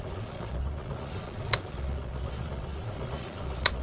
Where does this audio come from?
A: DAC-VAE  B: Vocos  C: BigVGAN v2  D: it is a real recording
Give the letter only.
B